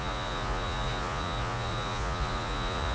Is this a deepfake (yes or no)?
yes